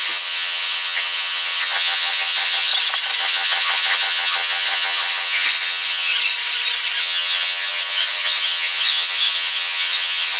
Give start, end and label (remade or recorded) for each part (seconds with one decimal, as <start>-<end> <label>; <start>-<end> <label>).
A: 0.0-2.7 remade; 2.7-3.2 recorded; 3.2-6.1 remade; 6.1-7.0 recorded; 7.0-10.4 remade